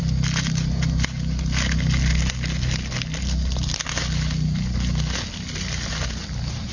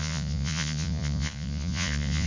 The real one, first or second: first